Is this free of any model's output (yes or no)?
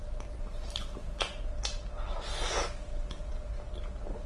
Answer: yes